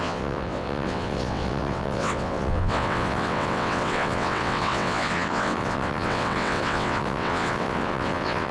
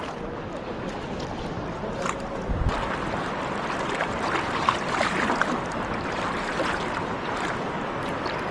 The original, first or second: second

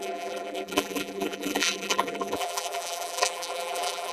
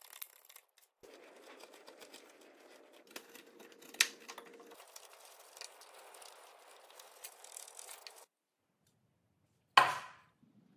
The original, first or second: second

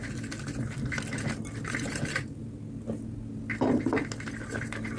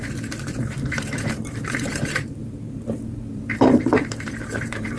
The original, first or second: first